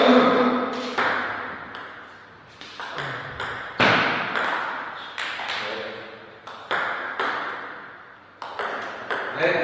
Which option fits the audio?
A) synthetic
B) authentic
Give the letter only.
B